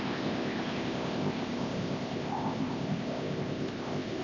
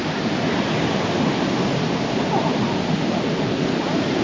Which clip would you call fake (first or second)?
first